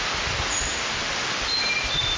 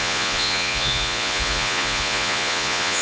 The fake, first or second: second